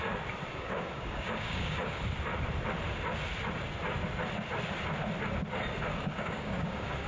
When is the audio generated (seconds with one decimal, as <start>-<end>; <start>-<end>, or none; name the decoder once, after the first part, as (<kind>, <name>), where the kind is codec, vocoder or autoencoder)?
0.5-2.0 (codec, DAC); 5.9-7.1